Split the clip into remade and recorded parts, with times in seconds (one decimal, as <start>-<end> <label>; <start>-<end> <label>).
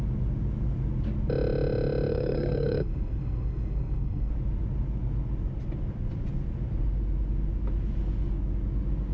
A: 0.0-2.1 recorded; 2.1-4.3 remade; 4.3-9.1 recorded